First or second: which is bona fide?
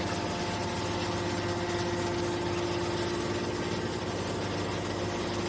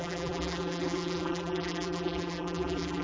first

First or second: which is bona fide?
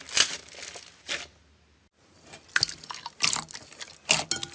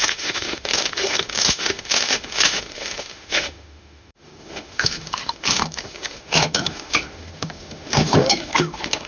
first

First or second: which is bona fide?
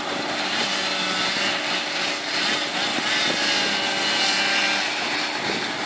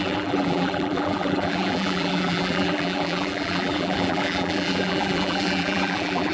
first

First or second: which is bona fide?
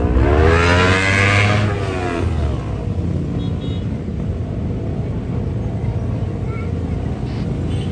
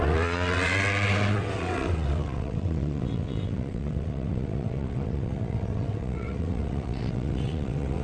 first